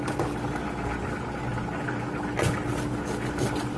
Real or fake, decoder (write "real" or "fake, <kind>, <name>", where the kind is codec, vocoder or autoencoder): real